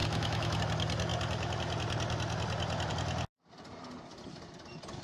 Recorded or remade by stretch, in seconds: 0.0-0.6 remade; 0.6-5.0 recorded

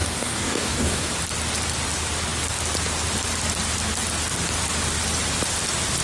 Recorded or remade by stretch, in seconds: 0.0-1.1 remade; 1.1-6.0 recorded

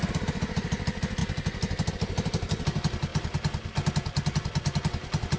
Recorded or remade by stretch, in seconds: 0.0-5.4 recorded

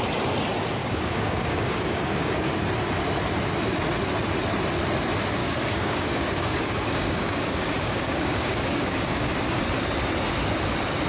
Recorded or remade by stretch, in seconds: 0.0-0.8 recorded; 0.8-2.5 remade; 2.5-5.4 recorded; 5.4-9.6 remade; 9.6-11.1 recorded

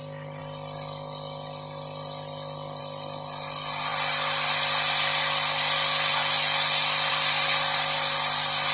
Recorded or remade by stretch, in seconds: 0.0-8.7 recorded